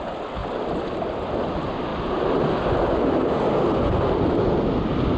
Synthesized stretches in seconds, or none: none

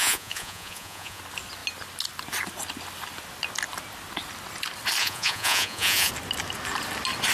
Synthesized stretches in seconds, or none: 0.0-1.2 (vocoder, Vocos); 5.0-6.1

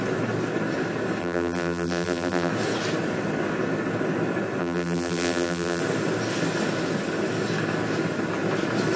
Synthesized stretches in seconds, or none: 1.2-2.5 (vocoder, BigVGAN v2); 4.6-5.8

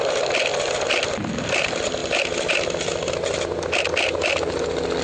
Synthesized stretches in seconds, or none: none

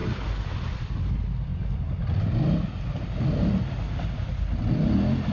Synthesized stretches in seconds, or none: 0.0-0.5 (vocoder, BigVGAN v2)

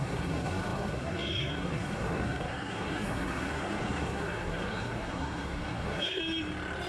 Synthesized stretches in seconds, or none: 0.0-6.2 (codec, SNAC)

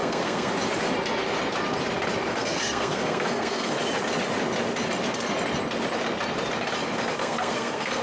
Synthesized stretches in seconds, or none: 0.0-0.5 (codec, SNAC); 2.3-3.8; 7.2-8.0

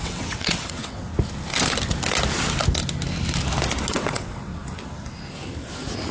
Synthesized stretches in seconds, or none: 0.0-1.1 (vocoder, WaveNeXt); 3.9-4.5